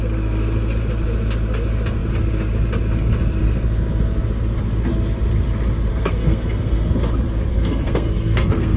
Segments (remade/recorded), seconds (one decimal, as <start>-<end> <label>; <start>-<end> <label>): 0.0-5.9 recorded; 5.9-6.9 remade; 6.9-7.5 recorded; 7.5-8.8 remade